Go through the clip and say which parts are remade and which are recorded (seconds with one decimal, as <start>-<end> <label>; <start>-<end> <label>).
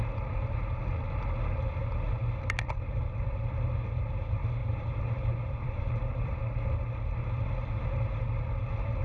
0.0-4.6 recorded; 4.6-5.9 remade; 5.9-9.0 recorded